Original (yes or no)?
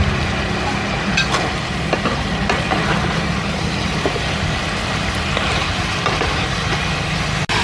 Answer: yes